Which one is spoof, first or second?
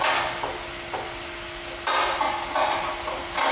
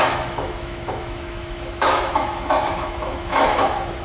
second